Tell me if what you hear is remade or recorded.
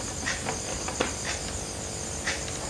recorded